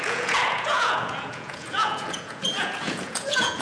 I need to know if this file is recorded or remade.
remade